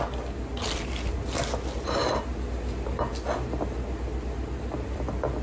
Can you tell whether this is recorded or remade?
recorded